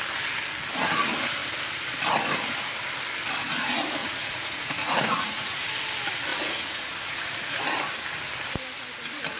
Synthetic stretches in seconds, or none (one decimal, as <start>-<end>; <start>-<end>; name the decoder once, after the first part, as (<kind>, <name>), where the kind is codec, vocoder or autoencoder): 4.0-5.7 (vocoder, Vocos); 6.3-7.6